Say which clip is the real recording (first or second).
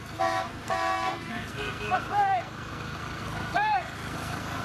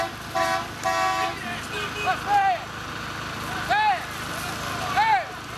second